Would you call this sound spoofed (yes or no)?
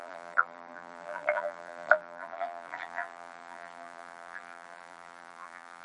yes